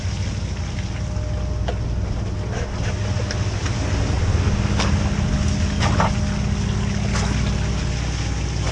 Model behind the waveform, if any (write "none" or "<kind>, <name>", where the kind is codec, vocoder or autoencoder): none